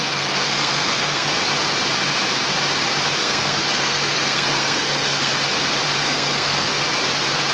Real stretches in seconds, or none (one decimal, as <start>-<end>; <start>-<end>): 1.3-3.2; 5.3-6.0; 6.8-7.5